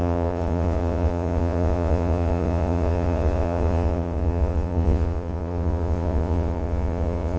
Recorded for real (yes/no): no